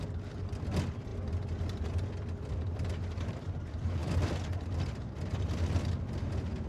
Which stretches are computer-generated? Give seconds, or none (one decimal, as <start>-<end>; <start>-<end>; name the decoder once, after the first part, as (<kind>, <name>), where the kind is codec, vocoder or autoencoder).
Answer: none